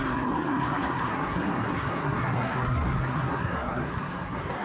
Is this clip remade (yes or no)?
yes